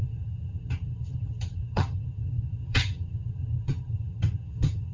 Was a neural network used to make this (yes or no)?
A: yes